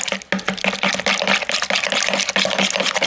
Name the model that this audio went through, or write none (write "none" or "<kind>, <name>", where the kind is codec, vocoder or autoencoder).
none